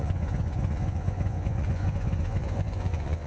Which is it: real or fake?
fake